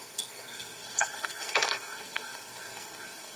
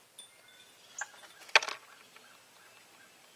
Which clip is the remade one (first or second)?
first